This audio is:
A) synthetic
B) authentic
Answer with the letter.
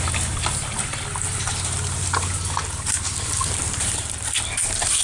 B